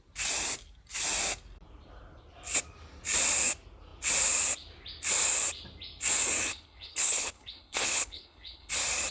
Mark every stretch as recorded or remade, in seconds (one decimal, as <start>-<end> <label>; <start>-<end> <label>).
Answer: 0.0-6.5 recorded; 6.5-8.7 remade; 8.7-9.1 recorded